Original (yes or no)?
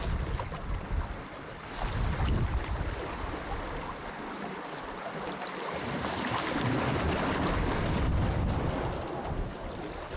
yes